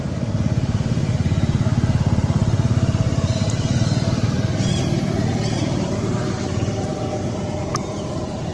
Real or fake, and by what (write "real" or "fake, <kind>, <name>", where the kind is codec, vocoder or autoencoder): fake, vocoder, BigVGAN v2